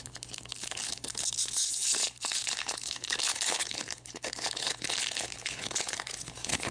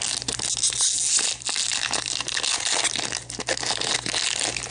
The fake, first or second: first